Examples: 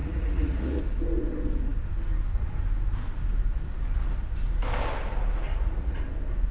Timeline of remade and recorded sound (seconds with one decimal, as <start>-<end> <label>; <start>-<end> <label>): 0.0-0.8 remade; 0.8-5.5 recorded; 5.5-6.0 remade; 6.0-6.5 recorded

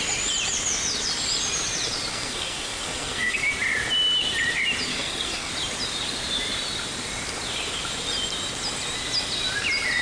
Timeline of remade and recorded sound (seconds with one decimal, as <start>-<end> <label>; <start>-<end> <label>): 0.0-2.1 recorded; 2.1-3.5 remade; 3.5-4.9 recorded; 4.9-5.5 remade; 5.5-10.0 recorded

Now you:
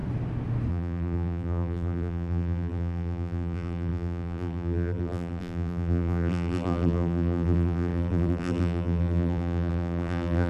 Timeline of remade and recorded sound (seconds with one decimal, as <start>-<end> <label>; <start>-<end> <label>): 0.0-0.7 recorded; 0.7-10.5 remade

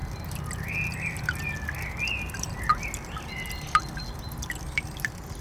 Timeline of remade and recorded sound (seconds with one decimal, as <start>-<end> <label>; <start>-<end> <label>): 0.0-5.4 recorded

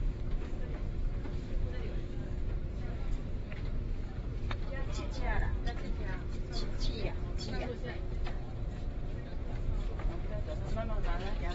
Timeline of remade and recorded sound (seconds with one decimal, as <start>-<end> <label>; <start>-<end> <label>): 0.0-11.5 remade

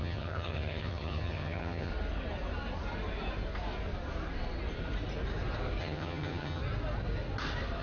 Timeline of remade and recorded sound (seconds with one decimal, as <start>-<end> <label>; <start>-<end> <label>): 0.0-1.9 remade; 1.9-5.8 recorded; 5.8-6.6 remade; 6.6-7.8 recorded

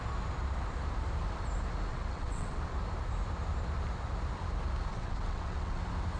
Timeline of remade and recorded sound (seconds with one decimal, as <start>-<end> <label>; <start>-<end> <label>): 0.0-1.9 recorded; 1.9-2.6 remade; 2.6-4.9 recorded; 4.9-5.8 remade; 5.8-6.2 recorded

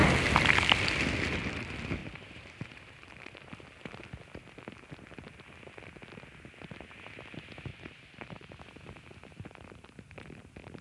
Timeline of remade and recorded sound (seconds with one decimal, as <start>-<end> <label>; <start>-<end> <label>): 0.0-2.0 recorded; 2.0-3.5 remade; 3.5-7.7 recorded; 7.7-8.6 remade; 8.6-10.8 recorded